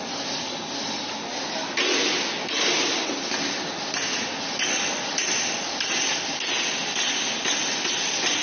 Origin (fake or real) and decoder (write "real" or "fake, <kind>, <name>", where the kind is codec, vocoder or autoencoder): real